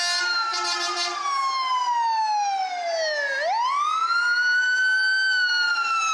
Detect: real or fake real